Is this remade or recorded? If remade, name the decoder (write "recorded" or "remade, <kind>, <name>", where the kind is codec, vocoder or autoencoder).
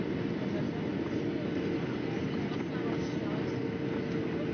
recorded